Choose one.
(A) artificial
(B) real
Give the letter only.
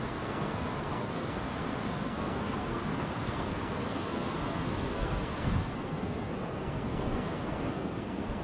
A